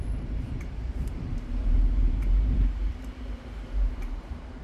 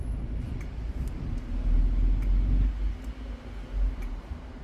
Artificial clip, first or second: first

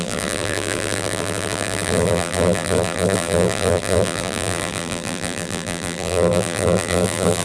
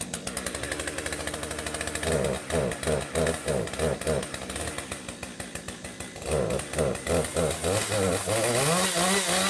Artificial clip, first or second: first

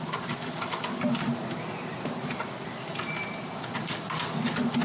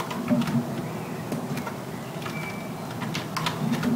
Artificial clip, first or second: first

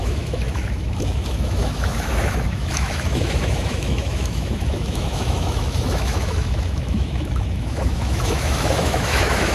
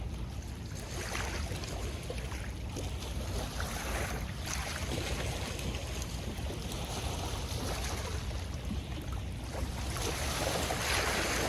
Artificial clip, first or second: first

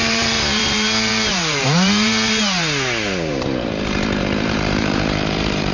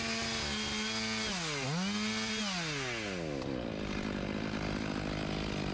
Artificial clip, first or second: first